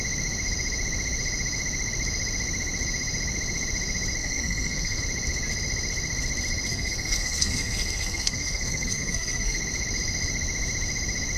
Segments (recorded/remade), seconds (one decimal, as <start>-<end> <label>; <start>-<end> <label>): 0.0-4.2 recorded; 4.2-5.0 remade; 5.0-6.7 recorded; 6.7-9.6 remade; 9.6-11.4 recorded

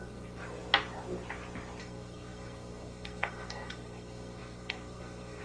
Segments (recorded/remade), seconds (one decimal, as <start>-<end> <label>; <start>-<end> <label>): 0.0-0.4 remade; 0.4-1.8 recorded; 1.8-5.4 remade

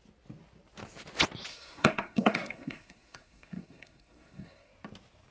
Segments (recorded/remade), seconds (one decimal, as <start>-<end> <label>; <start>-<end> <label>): 0.0-1.5 recorded; 1.5-4.7 remade; 4.7-5.3 recorded

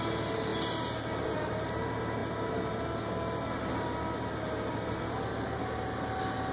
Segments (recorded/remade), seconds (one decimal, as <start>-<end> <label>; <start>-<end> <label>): 0.0-6.5 recorded

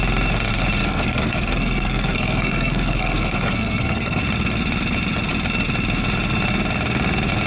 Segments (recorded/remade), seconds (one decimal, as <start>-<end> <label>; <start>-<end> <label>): 0.0-0.8 recorded; 0.8-4.2 remade; 4.2-7.5 recorded

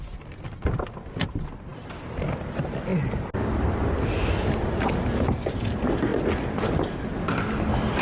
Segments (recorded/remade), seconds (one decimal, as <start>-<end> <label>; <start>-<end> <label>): 0.0-8.0 recorded

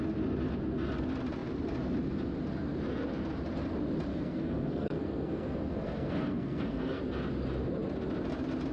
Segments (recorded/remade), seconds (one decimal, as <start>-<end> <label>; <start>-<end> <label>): 0.0-4.1 recorded; 4.1-7.0 remade; 7.0-8.7 recorded

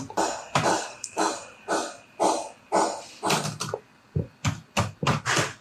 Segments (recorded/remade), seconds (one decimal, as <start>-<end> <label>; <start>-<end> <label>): 0.0-0.7 recorded; 0.7-1.3 remade; 1.3-5.6 recorded